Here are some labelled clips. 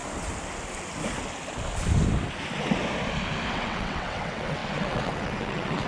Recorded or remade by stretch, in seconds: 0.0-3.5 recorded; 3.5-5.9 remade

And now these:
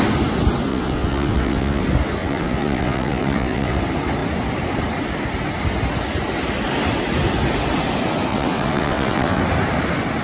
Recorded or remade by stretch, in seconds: 0.0-0.7 recorded; 0.7-1.8 remade; 1.8-2.2 recorded; 2.2-3.8 remade; 3.8-8.3 recorded; 8.3-9.4 remade; 9.4-10.2 recorded

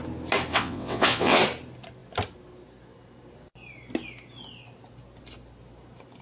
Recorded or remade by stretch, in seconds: 0.0-0.5 recorded; 0.5-1.4 remade; 1.4-6.2 recorded

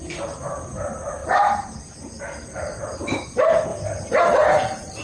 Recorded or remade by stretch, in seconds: 0.0-5.0 recorded

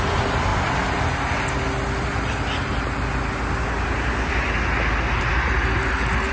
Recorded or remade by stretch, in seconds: 0.0-6.3 recorded

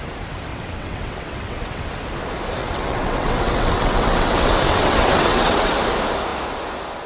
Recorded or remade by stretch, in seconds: 0.0-0.5 recorded; 0.5-1.9 remade; 1.9-2.6 recorded; 2.6-5.7 remade; 5.7-7.1 recorded